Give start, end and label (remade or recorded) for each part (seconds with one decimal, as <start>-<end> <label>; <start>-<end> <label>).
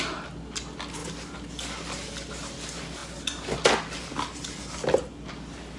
0.0-5.8 recorded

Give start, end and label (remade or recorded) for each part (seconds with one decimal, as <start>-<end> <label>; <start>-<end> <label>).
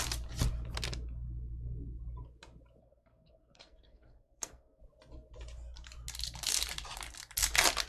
0.0-2.8 recorded; 2.8-4.8 remade; 4.8-7.9 recorded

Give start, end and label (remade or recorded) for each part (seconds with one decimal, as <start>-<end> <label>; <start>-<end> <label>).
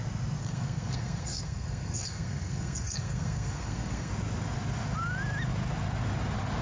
0.0-0.4 recorded; 0.4-4.1 remade; 4.1-6.6 recorded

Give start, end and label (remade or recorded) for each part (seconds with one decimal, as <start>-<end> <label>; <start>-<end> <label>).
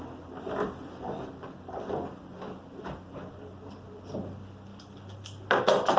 0.0-6.0 recorded